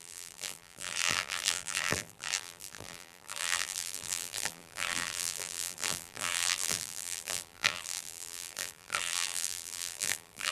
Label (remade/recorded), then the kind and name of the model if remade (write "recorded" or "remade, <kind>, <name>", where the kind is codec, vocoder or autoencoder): remade, vocoder, BigVGAN v2